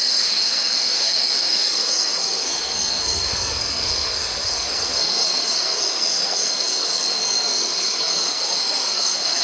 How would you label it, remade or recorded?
remade